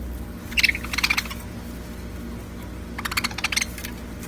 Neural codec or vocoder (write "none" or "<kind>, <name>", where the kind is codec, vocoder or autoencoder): none